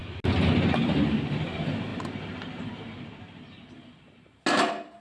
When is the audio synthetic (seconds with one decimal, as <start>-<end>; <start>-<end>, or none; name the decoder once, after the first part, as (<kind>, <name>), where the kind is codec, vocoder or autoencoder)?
none